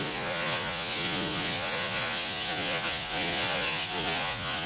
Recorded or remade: remade